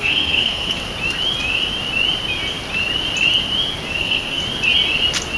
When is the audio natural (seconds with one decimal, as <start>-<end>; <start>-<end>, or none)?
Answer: 0.8-4.0; 4.4-5.4